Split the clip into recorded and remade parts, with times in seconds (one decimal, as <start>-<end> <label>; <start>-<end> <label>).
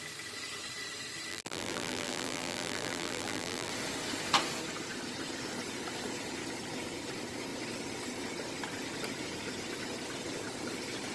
0.0-1.3 recorded; 1.3-3.7 remade; 3.7-11.1 recorded